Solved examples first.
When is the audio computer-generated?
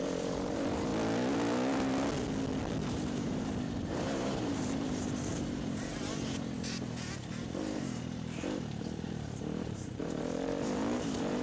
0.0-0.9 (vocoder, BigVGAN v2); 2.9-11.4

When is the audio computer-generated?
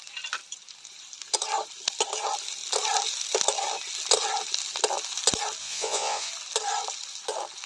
5.6-6.3 (vocoder, Vocos)